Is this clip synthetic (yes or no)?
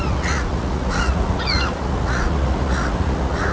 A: yes